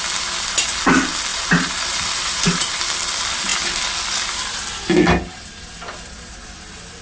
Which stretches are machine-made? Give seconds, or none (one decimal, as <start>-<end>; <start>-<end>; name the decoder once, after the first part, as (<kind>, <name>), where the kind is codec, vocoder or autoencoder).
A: 1.3-2.8 (vocoder, BigVGAN v2)